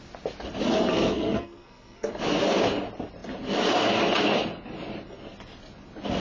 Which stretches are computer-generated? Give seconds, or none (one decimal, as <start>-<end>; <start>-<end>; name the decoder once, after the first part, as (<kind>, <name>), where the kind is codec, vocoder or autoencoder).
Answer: 0.9-2.1 (codec, SNAC)